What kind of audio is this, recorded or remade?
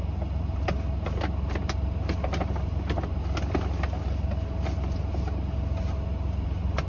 recorded